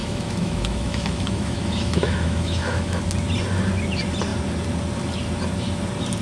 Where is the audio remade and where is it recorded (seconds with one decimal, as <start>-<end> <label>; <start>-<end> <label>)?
0.0-3.0 remade; 3.0-6.2 recorded